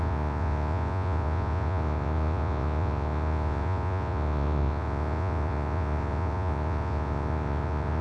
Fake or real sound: fake